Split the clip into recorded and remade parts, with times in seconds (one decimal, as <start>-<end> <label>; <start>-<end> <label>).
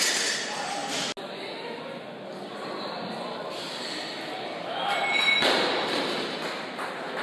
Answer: 0.0-7.2 recorded